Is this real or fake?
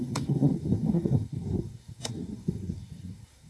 fake